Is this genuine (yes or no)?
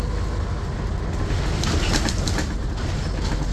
yes